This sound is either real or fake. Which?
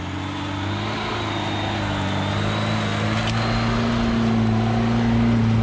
real